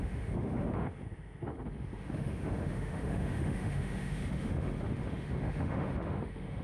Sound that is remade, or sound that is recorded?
remade